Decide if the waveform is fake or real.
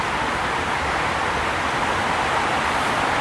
real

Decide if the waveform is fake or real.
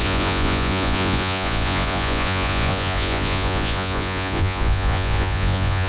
fake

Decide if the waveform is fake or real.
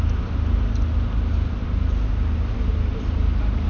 real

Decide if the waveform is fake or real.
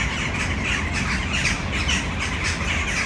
real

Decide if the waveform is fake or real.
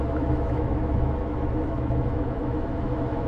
fake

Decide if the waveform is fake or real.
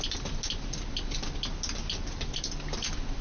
real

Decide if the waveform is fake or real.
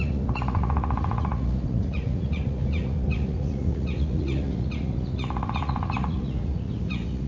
fake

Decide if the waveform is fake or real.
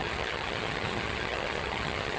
fake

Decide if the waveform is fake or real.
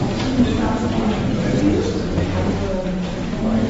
real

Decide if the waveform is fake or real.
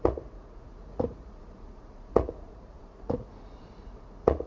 fake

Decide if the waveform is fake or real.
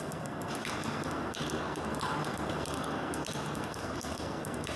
fake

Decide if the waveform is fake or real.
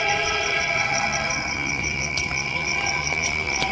fake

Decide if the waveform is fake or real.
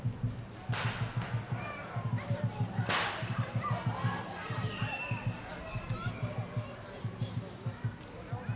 real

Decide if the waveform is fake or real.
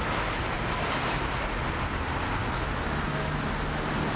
real